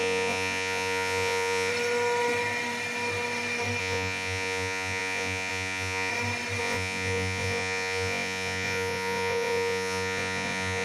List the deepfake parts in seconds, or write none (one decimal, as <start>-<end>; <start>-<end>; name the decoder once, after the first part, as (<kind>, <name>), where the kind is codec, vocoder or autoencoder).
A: 0.0-1.7 (vocoder, Vocos); 3.8-6.1; 6.6-10.8